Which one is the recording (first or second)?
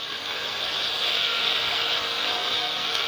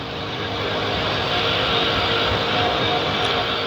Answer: second